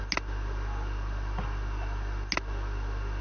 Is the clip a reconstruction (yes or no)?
no